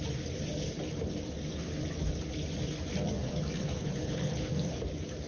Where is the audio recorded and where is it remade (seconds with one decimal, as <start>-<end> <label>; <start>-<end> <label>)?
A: 0.0-3.6 recorded; 3.6-4.5 remade; 4.5-5.3 recorded